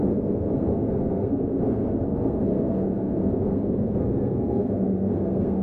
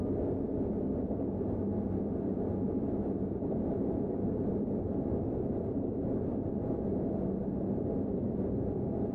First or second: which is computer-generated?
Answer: first